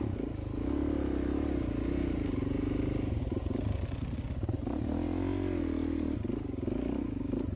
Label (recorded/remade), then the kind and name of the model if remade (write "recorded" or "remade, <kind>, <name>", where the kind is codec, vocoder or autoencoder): recorded